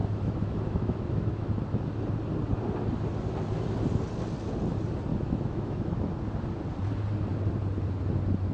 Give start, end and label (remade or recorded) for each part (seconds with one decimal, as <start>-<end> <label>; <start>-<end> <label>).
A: 0.0-1.5 remade; 1.5-5.1 recorded; 5.1-6.1 remade; 6.1-8.5 recorded